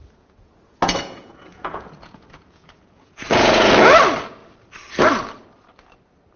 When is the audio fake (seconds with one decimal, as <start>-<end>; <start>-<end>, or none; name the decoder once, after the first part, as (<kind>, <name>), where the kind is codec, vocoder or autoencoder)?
0.0-3.7 (vocoder, Vocos)